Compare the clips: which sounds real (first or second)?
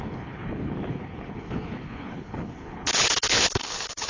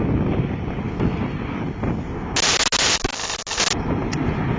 second